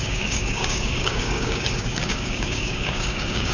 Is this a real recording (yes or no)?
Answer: no